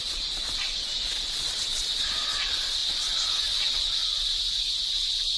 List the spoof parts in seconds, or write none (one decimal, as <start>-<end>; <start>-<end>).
0.0-4.0